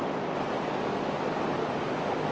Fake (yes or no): no